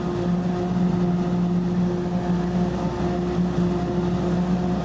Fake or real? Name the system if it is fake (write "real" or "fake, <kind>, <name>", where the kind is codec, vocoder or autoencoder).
real